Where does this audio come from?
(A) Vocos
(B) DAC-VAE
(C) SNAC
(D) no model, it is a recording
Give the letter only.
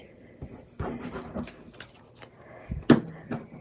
D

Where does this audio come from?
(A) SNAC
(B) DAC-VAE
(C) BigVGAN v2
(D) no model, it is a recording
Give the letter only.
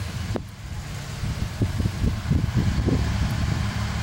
C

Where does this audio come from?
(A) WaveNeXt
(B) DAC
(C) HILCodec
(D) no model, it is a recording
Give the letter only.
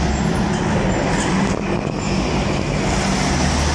D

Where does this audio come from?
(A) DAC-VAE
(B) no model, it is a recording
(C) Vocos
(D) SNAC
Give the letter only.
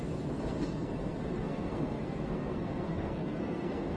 D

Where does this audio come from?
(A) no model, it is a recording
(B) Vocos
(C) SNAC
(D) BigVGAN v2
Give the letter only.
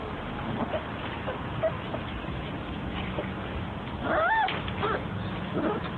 A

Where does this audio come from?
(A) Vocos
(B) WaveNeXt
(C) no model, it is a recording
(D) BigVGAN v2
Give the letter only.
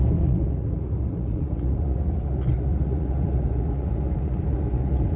A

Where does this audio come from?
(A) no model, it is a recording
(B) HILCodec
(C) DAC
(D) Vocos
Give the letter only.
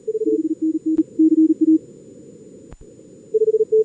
A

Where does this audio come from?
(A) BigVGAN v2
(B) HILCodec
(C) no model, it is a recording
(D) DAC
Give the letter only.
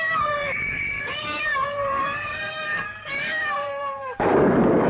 D